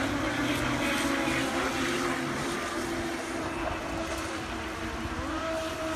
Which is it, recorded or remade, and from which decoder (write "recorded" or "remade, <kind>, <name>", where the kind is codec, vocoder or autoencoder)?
recorded